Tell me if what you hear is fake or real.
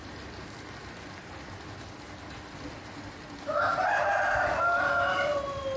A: real